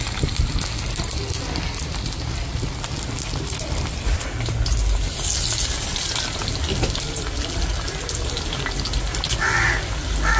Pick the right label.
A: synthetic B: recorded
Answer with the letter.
B